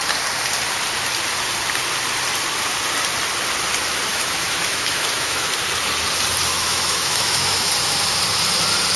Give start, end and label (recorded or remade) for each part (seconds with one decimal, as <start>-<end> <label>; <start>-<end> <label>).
0.0-4.1 recorded; 4.1-5.5 remade; 5.5-6.5 recorded; 6.5-7.7 remade; 7.7-9.0 recorded

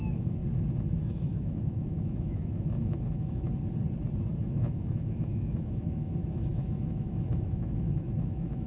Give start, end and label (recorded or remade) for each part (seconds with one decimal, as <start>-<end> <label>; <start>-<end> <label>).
0.0-0.4 remade; 0.4-1.0 recorded; 1.0-3.5 remade; 3.5-4.4 recorded; 4.4-8.7 remade

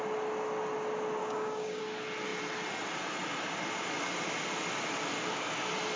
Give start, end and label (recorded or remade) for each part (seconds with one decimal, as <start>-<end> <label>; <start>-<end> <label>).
0.0-1.2 recorded; 1.2-1.8 remade; 1.8-6.0 recorded